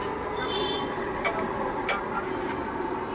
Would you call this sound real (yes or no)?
yes